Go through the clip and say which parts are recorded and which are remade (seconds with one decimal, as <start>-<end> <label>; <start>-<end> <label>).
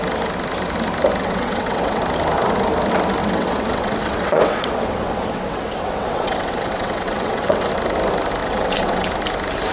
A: 0.0-1.2 recorded; 1.2-2.0 remade; 2.0-3.2 recorded; 3.2-7.7 remade; 7.7-8.4 recorded; 8.4-9.1 remade; 9.1-9.7 recorded